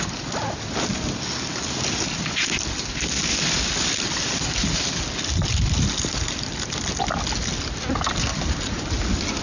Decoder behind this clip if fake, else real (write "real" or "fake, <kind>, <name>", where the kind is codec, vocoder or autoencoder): real